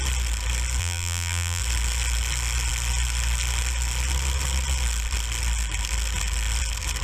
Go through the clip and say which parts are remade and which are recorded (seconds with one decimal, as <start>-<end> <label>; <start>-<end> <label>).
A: 0.0-0.8 recorded; 0.8-1.6 remade; 1.6-7.0 recorded